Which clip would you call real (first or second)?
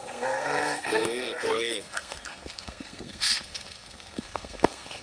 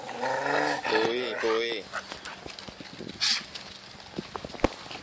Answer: second